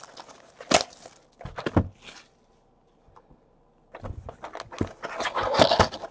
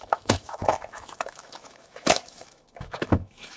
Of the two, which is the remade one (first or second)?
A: second